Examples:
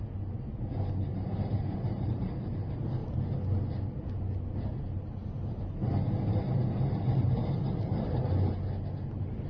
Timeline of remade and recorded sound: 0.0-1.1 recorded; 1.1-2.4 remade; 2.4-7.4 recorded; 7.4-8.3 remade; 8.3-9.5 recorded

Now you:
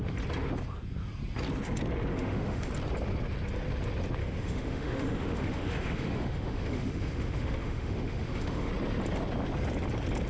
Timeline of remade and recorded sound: 0.0-2.1 recorded; 2.1-2.7 remade; 2.7-4.2 recorded; 4.2-8.7 remade; 8.7-10.3 recorded

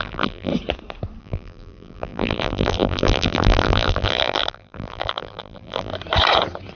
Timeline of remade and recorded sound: 0.0-0.5 remade; 0.5-1.2 recorded; 1.2-5.9 remade; 5.9-6.8 recorded

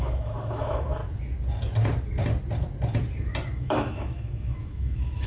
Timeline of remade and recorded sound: 0.0-1.0 remade; 1.0-3.5 recorded; 3.5-5.3 remade

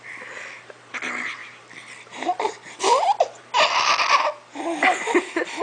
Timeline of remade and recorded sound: 0.0-1.4 recorded; 1.4-3.4 remade; 3.4-5.6 recorded

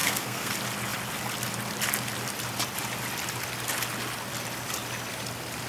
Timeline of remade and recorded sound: 0.0-0.5 remade; 0.5-5.7 recorded

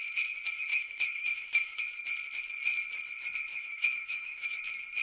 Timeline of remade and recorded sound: 0.0-0.7 recorded; 0.7-1.8 remade; 1.8-3.5 recorded; 3.5-4.6 remade; 4.6-5.0 recorded